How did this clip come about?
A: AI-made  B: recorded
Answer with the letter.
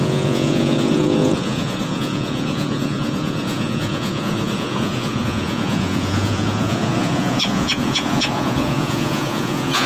A